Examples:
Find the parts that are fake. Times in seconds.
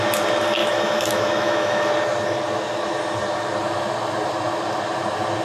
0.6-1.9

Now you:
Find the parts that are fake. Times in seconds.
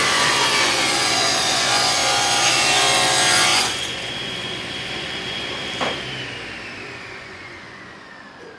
0.0-5.6; 6.9-8.6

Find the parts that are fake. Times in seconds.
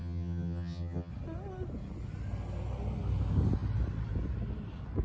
0.0-1.1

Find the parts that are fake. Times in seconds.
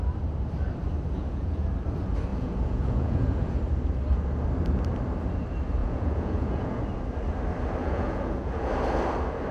1.2-1.7; 2.3-3.6; 5.8-6.8; 7.8-8.7